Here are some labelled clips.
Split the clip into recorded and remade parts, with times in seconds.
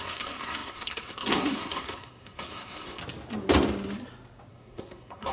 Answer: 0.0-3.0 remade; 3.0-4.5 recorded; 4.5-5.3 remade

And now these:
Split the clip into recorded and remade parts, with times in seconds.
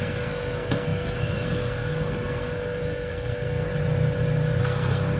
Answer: 0.0-3.7 remade; 3.7-4.6 recorded; 4.6-5.2 remade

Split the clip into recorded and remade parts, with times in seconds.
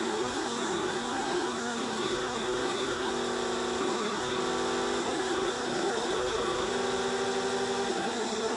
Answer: 0.0-3.1 remade; 3.1-3.8 recorded; 3.8-4.4 remade; 4.4-5.0 recorded; 5.0-6.7 remade; 6.7-7.9 recorded; 7.9-8.6 remade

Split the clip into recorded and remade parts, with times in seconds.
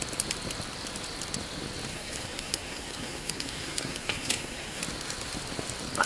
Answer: 0.0-1.9 recorded; 1.9-4.8 remade; 4.8-6.1 recorded